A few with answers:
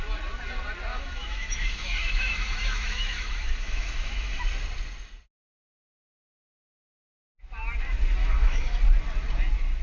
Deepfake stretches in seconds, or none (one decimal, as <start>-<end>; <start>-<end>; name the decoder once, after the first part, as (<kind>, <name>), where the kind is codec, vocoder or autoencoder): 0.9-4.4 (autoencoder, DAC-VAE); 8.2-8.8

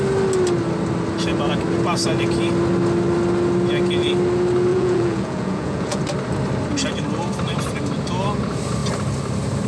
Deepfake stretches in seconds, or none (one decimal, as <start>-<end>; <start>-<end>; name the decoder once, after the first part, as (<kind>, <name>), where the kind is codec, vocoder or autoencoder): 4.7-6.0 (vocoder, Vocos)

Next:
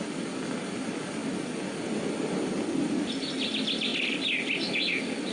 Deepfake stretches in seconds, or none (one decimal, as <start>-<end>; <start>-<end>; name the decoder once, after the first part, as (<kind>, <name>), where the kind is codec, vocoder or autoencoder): 3.9-5.3 (vocoder, BigVGAN v2)

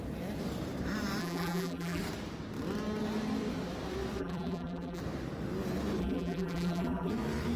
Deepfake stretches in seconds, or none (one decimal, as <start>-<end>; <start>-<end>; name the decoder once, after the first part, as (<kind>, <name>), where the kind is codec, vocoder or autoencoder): 1.2-2.0 (vocoder, BigVGAN v2); 4.2-5.0; 6.0-7.1

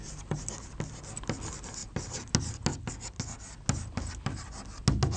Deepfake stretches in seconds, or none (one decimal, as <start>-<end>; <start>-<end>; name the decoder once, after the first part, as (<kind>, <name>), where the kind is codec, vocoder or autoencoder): none

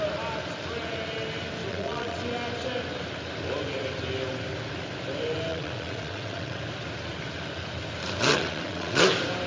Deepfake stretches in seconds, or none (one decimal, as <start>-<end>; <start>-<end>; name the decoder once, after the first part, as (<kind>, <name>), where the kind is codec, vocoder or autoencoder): 1.7-2.2 (vocoder, WaveNeXt); 5.5-6.6; 8.3-9.1